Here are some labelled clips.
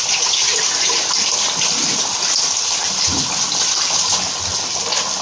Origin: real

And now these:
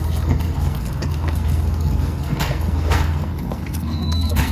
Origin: fake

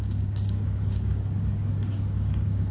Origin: fake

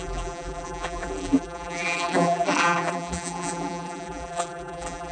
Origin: fake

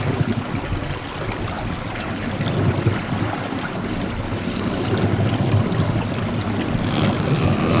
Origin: real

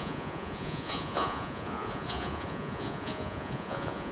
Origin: fake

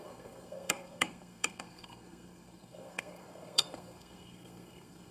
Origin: fake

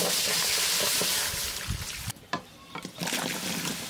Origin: fake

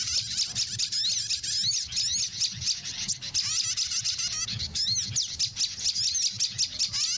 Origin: real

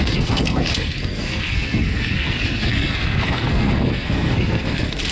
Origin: fake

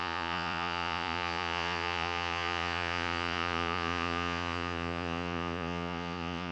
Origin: fake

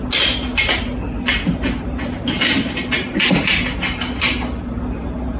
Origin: real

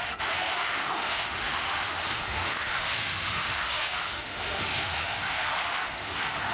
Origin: fake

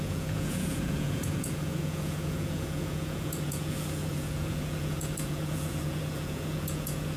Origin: fake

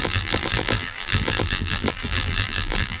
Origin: fake